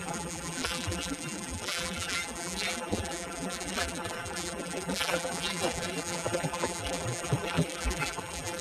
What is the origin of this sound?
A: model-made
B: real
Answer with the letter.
A